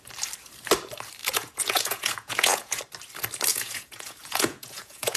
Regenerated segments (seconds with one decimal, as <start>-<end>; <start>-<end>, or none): 1.2-2.8; 3.5-5.2